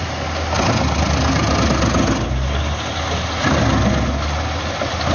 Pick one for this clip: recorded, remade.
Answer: recorded